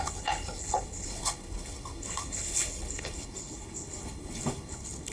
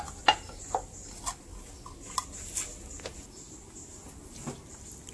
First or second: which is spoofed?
first